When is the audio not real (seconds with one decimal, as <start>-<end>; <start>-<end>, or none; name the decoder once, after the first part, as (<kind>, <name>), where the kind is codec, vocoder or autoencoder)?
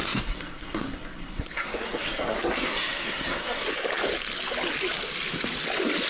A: 0.0-3.7 (codec, SNAC)